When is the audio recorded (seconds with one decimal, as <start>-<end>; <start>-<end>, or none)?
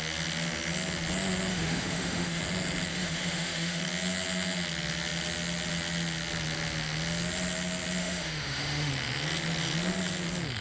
0.0-1.5; 2.4-2.9; 3.8-8.0; 8.9-10.6